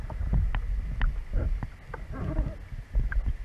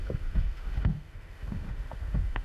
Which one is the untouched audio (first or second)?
first